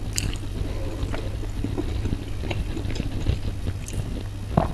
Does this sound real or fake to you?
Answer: real